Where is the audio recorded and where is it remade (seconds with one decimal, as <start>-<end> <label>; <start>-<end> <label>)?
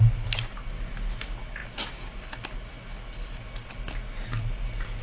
0.0-5.0 recorded